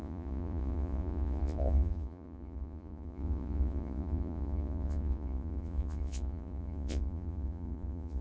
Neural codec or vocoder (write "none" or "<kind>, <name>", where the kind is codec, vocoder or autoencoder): vocoder, Vocos